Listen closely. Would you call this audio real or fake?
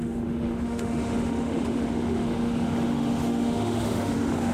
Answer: fake